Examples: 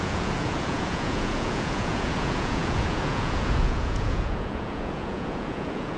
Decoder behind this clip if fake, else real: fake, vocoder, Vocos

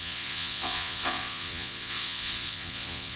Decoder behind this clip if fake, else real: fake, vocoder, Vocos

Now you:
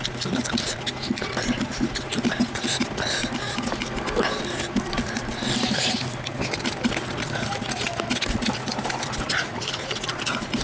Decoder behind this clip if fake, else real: real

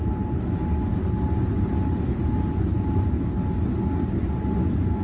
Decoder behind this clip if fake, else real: real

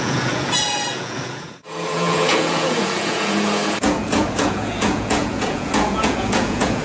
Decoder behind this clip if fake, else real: fake, vocoder, Vocos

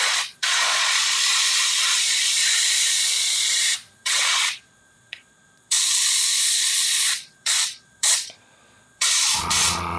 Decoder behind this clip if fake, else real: fake, vocoder, Vocos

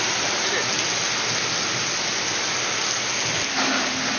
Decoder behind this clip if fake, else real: real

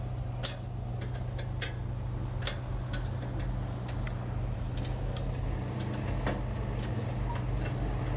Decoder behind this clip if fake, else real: real